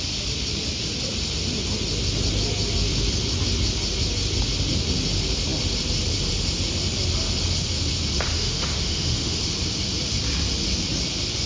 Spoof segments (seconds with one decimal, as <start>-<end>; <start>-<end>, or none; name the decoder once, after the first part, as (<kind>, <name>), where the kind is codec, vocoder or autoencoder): 8.3-9.4 (autoencoder, DAC-VAE)